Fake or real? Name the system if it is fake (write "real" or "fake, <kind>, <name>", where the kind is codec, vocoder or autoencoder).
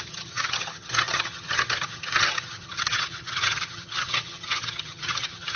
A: fake, vocoder, HiFi-GAN